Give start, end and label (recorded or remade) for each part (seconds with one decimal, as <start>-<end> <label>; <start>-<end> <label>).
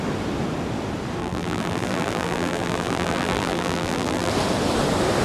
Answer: 0.0-1.2 recorded; 1.2-4.3 remade; 4.3-5.2 recorded